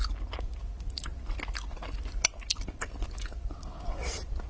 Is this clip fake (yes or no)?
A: no